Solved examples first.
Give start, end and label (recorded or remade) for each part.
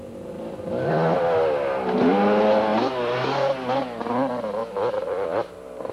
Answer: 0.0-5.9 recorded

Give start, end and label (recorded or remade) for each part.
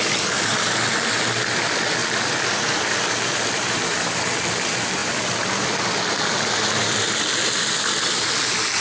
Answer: 0.0-8.8 recorded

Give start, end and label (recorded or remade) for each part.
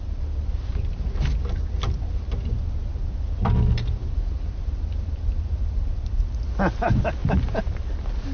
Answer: 0.0-7.2 recorded; 7.2-7.8 remade; 7.8-8.3 recorded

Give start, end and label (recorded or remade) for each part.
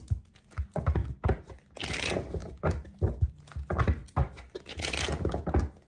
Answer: 0.0-1.0 recorded; 1.0-1.8 remade; 1.8-2.4 recorded; 2.4-3.4 remade; 3.4-5.9 recorded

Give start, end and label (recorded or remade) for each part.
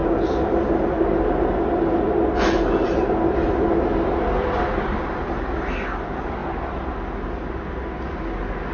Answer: 0.0-8.7 recorded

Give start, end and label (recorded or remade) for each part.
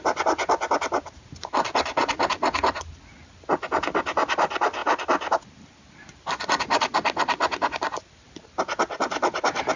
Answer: 0.0-9.8 recorded